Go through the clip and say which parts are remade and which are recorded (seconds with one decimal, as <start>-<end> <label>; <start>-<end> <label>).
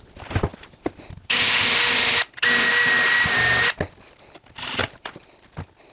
0.0-5.9 recorded